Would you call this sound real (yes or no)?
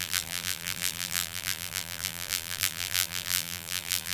no